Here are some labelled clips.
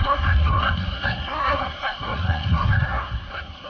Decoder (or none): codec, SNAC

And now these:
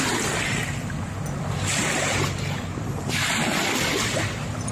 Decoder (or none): none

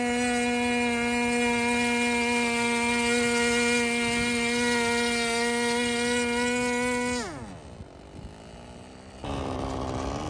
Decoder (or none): none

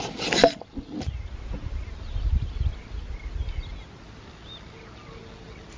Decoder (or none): none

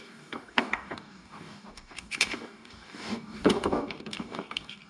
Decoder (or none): codec, DAC